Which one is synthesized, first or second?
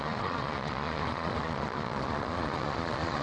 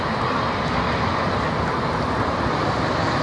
first